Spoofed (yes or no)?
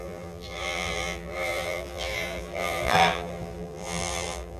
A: yes